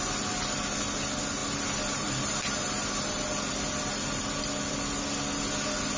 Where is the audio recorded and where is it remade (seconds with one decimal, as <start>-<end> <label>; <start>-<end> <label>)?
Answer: 0.0-6.0 recorded